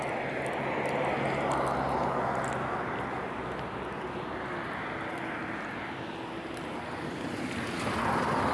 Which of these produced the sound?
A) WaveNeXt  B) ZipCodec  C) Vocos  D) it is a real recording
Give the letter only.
D